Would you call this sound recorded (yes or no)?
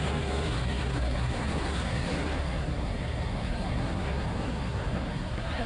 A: no